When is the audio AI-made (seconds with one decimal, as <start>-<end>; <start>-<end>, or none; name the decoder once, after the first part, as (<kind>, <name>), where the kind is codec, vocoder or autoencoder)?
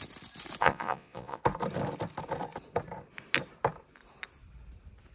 0.6-1.4 (vocoder, Vocos)